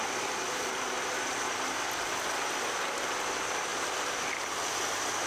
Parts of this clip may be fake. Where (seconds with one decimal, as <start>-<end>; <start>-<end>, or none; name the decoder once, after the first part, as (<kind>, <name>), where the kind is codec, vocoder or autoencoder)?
none